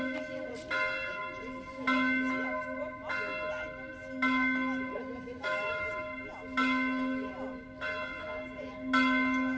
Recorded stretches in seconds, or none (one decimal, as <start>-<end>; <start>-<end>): 0.0-5.0; 5.9-9.6